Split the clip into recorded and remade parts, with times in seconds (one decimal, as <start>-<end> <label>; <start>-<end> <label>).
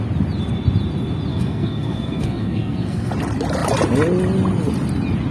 0.0-1.3 recorded; 1.3-3.1 remade; 3.1-5.3 recorded